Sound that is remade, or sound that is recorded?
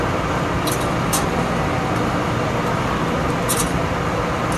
recorded